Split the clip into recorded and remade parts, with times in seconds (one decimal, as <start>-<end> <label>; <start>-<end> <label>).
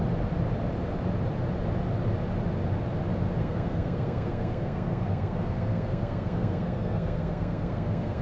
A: 0.0-3.4 recorded; 3.4-8.2 remade